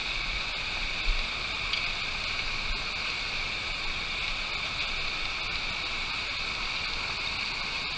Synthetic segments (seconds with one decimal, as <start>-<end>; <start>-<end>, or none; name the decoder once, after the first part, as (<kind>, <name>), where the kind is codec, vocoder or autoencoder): 0.0-0.5 (vocoder, Vocos)